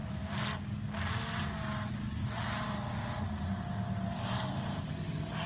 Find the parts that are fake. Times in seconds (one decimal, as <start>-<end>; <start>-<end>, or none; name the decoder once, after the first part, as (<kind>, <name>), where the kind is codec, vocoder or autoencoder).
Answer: none